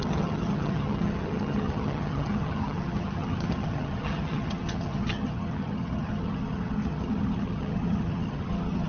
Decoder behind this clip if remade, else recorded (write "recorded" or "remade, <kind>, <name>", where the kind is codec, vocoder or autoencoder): remade, vocoder, HiFi-GAN